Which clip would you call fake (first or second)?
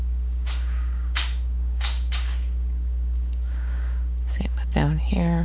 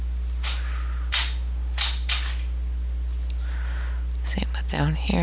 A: first